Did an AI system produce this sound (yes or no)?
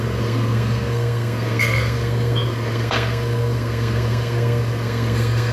yes